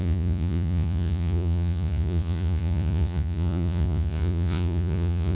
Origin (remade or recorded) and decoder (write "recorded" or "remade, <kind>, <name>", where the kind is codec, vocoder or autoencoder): remade, vocoder, Vocos